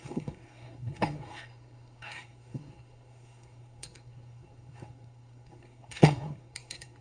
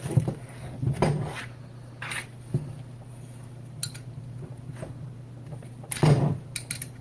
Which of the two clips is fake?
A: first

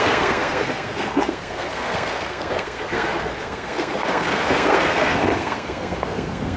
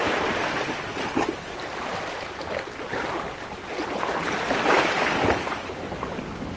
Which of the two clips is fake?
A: first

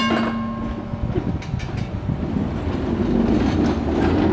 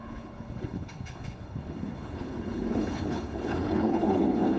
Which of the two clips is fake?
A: second